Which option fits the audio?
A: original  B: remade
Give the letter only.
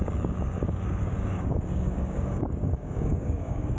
B